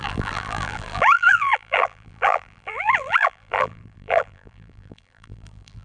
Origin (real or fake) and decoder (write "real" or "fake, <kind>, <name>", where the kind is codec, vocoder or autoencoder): fake, vocoder, BigVGAN v2